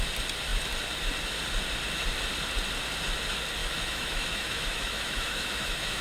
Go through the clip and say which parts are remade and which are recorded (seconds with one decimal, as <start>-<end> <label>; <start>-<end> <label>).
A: 0.0-3.6 recorded; 3.6-6.0 remade